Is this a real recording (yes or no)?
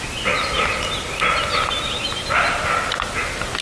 yes